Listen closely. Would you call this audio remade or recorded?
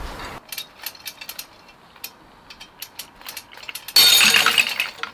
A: recorded